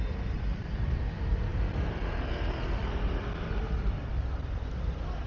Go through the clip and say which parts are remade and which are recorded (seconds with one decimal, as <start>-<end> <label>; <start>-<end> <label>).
0.0-5.3 recorded